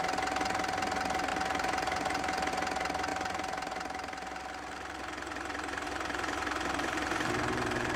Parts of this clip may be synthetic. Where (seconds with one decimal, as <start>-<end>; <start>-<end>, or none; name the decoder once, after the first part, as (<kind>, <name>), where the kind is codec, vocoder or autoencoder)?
1.3-2.5 (vocoder, BigVGAN v2); 3.1-8.0